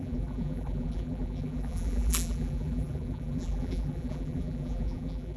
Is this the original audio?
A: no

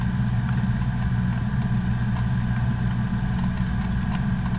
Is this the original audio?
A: yes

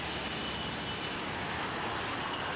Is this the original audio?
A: yes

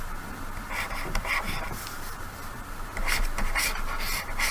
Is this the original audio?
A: yes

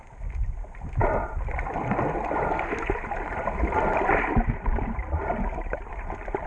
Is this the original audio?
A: yes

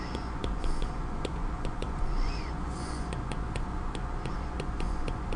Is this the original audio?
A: no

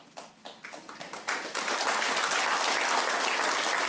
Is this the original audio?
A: yes